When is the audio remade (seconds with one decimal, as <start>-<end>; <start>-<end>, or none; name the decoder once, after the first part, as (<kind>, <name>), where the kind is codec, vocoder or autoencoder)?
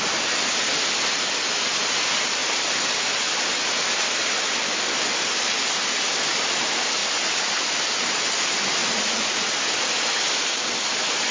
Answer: 8.8-9.5 (vocoder, Vocos)